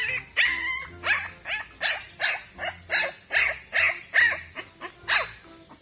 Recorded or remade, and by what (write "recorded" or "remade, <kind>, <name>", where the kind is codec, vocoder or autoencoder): recorded